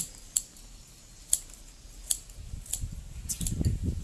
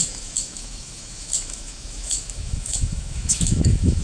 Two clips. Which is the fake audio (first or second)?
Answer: second